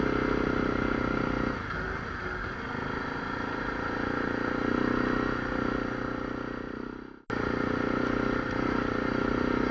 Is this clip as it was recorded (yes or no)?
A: yes